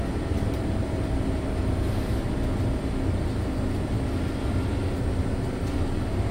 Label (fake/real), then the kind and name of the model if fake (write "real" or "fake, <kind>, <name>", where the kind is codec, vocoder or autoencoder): real